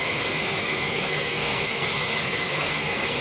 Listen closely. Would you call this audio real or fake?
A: fake